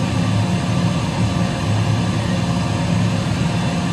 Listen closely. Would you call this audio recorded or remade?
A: recorded